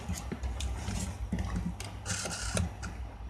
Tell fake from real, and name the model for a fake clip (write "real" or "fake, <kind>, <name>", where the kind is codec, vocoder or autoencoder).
real